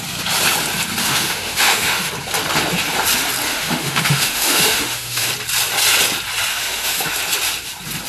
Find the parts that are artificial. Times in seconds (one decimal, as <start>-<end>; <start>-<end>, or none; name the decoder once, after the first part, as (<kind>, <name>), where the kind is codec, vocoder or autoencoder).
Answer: 1.0-2.1 (autoencoder, DAC-VAE); 3.5-5.3; 6.5-7.1